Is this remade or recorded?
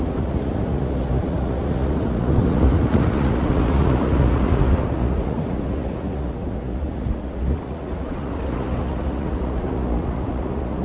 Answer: remade